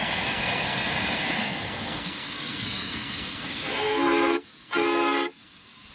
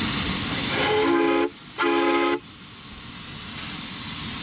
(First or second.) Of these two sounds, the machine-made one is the first